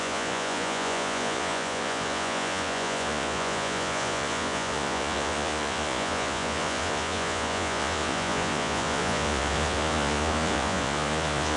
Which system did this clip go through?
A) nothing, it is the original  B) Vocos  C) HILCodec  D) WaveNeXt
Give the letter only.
B